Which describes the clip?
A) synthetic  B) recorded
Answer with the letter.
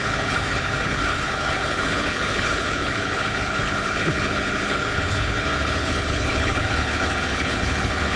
A